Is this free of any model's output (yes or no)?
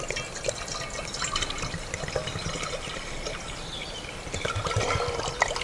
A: yes